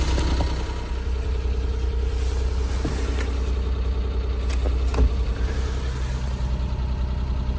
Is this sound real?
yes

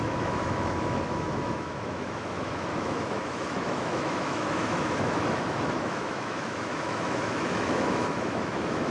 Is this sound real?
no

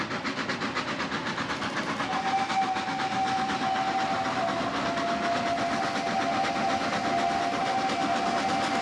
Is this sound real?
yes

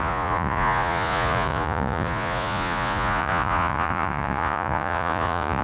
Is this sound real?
no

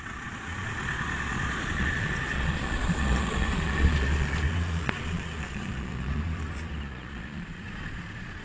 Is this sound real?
no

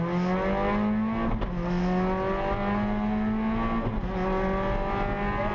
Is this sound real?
yes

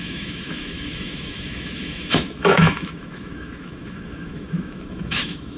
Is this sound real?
no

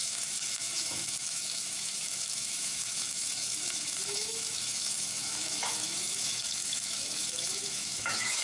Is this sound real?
no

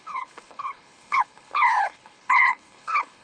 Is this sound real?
no